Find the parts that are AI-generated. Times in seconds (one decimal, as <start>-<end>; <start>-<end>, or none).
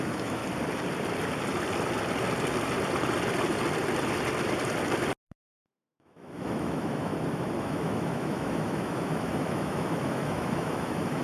0.0-0.4; 5.2-7.1; 7.6-11.2